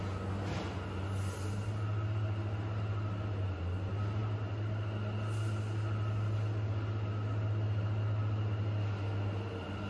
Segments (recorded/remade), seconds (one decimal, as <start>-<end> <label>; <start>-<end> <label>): 0.0-9.9 recorded